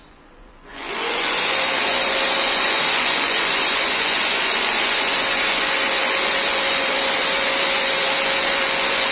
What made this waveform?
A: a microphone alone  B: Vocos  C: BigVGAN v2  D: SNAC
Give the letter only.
B